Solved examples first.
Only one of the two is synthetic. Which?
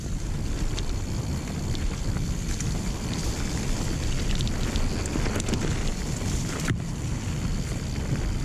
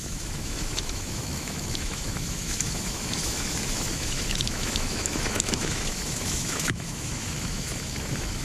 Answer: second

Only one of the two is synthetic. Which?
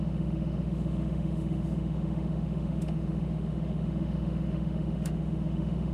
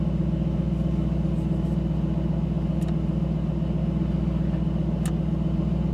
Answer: first